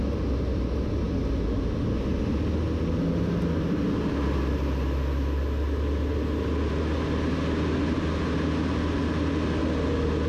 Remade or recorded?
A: recorded